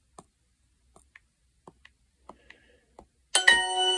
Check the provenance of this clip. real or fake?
real